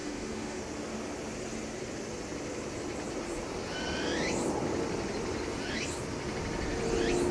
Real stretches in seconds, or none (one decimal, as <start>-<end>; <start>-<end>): 0.6-7.3

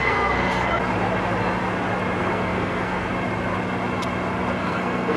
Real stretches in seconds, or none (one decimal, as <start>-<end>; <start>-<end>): 0.7-2.2; 3.1-4.6

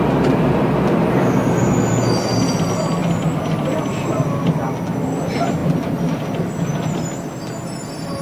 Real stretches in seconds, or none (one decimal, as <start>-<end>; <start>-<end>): 0.0-8.2

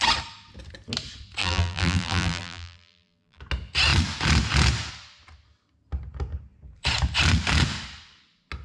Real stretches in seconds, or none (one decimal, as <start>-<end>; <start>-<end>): 0.0-1.4; 3.4-8.6

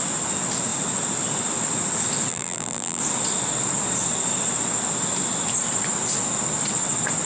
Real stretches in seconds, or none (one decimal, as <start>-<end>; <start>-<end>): 0.0-2.3; 3.0-7.3

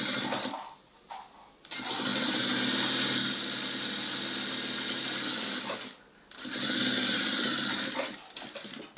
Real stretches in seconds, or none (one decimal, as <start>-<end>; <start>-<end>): 0.0-9.0

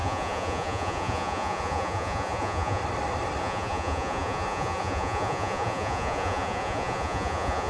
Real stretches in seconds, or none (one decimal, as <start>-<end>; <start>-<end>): 2.8-3.4